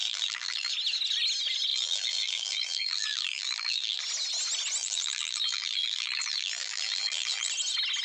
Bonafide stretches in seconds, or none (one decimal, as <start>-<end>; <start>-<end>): 0.7-1.7; 4.0-4.8; 7.5-8.0